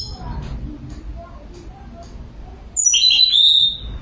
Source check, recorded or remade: recorded